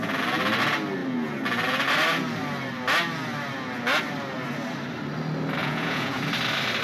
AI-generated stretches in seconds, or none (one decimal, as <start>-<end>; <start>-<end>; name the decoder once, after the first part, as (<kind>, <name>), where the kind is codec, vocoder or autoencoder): 5.6-6.2 (vocoder, Vocos)